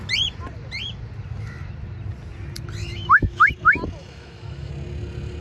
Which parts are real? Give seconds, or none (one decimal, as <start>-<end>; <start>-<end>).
0.0-2.8; 3.5-4.0; 4.7-5.4